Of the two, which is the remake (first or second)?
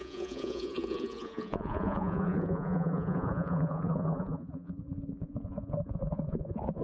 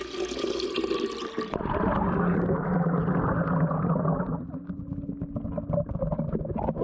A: first